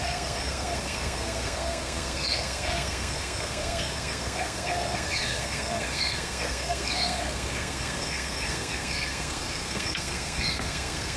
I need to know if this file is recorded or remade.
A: remade